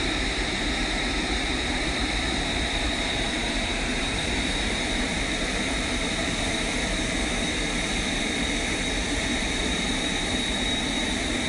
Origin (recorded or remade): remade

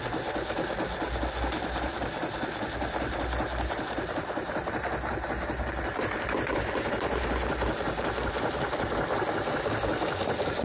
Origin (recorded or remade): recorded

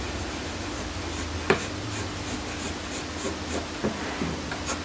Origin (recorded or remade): recorded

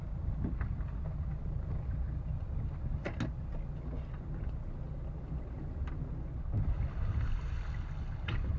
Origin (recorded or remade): recorded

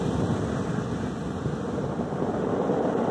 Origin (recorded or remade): recorded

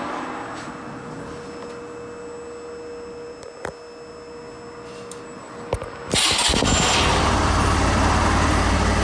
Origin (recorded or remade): recorded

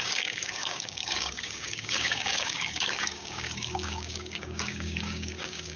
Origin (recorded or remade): remade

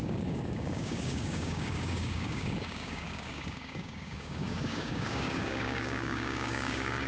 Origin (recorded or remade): remade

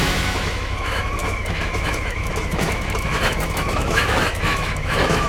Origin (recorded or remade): remade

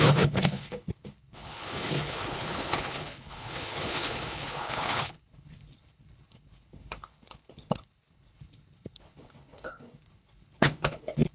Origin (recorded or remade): remade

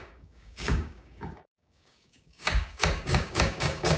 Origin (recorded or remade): remade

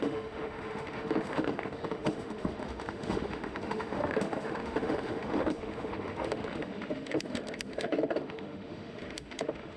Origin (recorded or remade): remade